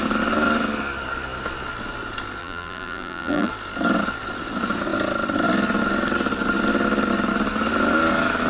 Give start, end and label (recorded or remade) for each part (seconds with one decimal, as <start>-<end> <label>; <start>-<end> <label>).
0.0-2.4 recorded; 2.4-3.5 remade; 3.5-8.5 recorded